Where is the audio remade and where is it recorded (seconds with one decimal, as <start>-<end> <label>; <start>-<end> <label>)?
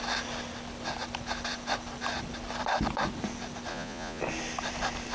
0.0-3.7 recorded; 3.7-4.2 remade; 4.2-5.1 recorded